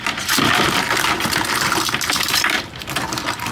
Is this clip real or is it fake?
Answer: real